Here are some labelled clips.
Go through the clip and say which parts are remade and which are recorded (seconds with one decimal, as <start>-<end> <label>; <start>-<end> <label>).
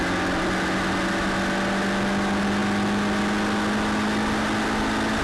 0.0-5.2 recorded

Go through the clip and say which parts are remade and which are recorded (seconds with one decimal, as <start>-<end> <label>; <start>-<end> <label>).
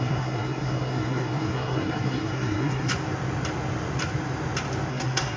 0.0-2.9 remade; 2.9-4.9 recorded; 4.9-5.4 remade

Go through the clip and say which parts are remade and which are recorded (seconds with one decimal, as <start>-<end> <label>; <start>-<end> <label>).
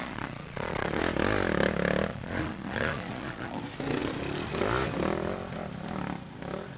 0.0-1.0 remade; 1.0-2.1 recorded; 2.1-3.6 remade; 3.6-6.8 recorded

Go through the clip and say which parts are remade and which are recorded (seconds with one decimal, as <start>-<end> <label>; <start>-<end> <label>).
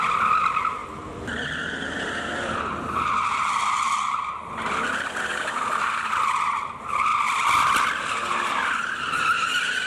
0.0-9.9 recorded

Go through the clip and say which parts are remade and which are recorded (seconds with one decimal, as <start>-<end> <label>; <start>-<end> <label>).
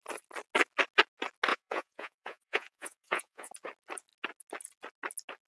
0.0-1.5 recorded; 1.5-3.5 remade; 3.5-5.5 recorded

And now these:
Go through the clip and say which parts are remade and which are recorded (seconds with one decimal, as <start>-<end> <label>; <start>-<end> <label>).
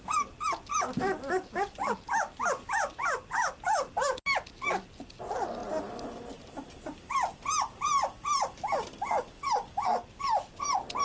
0.0-11.0 recorded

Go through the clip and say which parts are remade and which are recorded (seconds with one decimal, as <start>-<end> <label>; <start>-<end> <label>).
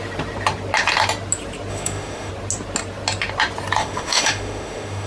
0.0-1.7 recorded; 1.7-2.3 remade; 2.3-3.8 recorded; 3.8-5.1 remade